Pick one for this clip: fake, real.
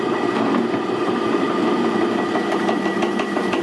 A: fake